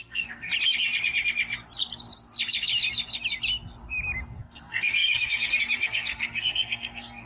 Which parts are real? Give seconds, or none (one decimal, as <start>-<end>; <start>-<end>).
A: 0.5-4.4